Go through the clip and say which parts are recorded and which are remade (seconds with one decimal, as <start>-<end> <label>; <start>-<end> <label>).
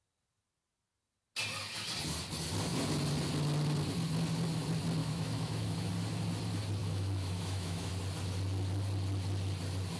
0.0-5.0 recorded; 5.0-5.9 remade; 5.9-6.8 recorded; 6.8-7.9 remade; 7.9-10.0 recorded